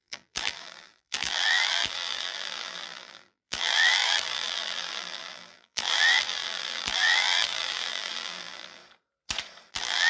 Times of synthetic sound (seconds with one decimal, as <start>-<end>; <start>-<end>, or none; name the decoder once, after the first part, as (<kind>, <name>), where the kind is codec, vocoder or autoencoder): 0.0-8.8 (vocoder, BigVGAN v2); 9.7-10.1